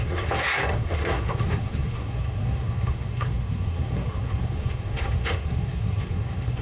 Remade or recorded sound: remade